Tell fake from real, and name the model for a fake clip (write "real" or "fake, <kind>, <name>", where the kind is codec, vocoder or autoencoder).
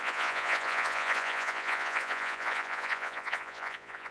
fake, vocoder, Vocos